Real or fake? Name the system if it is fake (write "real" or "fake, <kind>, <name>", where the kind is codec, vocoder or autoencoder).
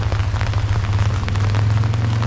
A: real